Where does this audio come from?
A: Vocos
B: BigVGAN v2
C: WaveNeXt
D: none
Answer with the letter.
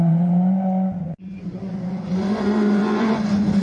A